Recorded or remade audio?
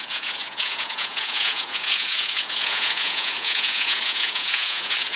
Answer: remade